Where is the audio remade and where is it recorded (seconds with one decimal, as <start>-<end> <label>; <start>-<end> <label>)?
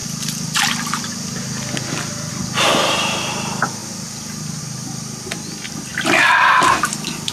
0.0-7.3 recorded